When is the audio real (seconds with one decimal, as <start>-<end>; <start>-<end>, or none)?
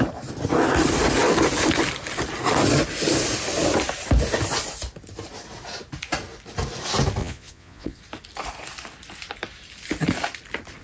0.0-7.2; 8.0-10.8